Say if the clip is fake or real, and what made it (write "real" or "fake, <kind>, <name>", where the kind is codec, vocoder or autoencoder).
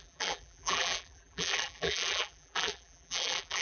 fake, vocoder, BigVGAN v2